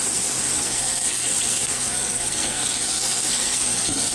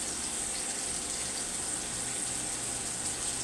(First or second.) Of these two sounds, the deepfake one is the first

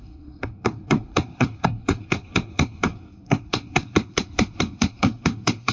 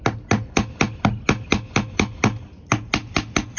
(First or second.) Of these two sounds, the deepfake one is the first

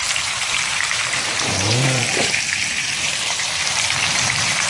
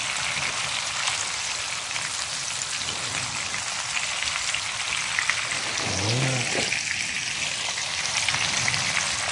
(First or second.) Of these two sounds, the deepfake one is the first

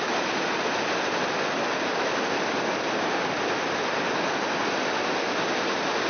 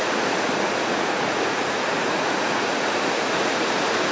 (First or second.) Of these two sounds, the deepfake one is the second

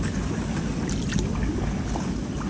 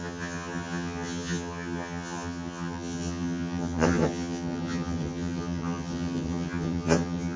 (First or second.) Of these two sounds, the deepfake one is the second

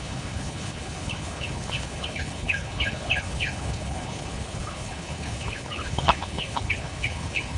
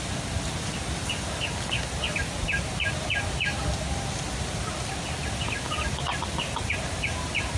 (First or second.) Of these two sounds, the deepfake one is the first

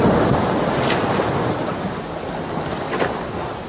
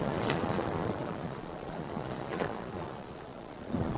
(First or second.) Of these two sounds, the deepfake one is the second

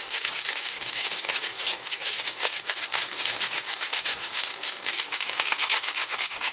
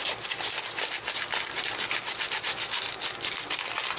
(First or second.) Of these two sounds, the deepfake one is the first